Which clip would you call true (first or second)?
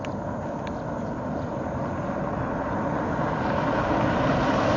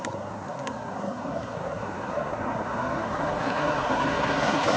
first